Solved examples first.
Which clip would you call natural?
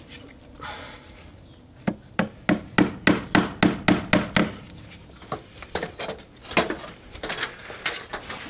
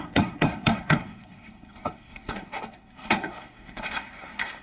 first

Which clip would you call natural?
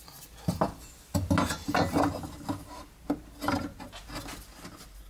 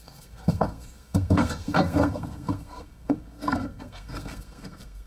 first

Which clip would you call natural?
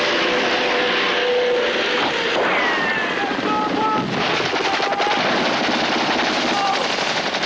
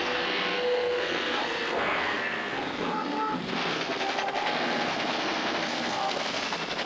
first